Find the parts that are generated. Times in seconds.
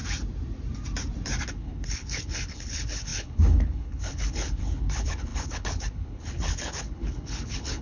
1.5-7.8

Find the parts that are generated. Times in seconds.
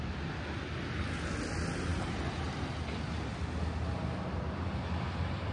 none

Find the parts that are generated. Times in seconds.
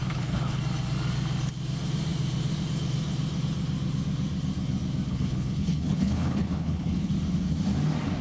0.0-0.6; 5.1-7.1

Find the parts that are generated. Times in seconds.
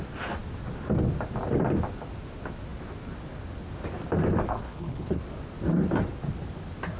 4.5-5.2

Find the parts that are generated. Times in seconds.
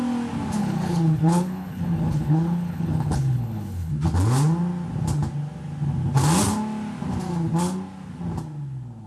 0.6-3.9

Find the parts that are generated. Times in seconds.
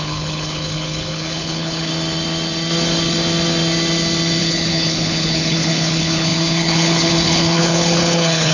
0.0-1.9; 4.4-8.5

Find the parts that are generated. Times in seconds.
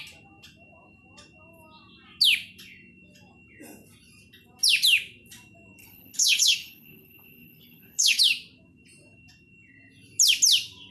5.8-8.2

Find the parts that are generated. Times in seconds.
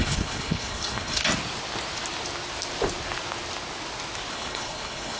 0.0-1.2; 4.3-5.2